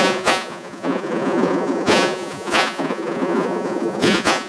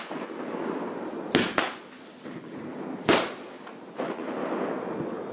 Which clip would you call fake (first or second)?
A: first